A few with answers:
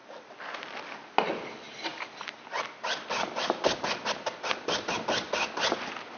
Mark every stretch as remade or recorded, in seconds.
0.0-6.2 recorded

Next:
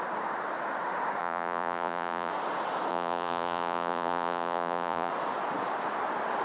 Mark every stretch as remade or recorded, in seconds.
0.0-1.2 recorded; 1.2-2.3 remade; 2.3-2.9 recorded; 2.9-5.1 remade; 5.1-6.4 recorded

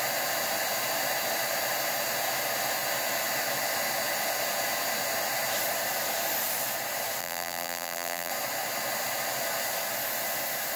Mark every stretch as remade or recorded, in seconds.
0.0-7.2 recorded; 7.2-8.3 remade; 8.3-10.8 recorded